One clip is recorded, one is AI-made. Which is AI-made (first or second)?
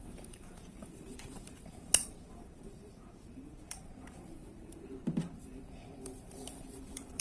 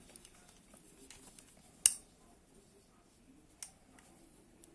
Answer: first